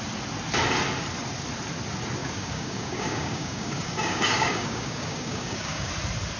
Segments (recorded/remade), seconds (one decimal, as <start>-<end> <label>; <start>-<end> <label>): 0.0-2.2 recorded; 2.2-5.9 remade; 5.9-6.4 recorded